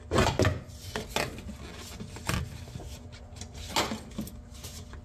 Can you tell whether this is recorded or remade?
recorded